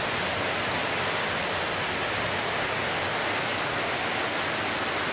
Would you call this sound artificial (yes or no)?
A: no